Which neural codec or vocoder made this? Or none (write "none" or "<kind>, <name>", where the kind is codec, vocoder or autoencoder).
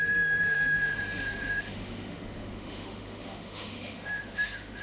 autoencoder, DAC-VAE